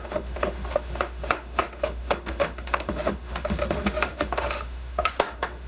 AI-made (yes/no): yes